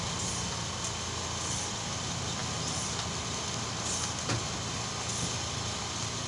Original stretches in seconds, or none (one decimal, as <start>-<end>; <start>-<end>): 0.0-6.3